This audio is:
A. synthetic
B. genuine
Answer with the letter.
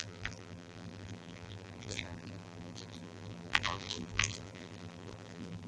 A